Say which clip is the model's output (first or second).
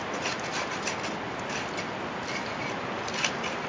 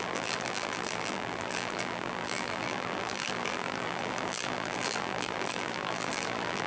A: second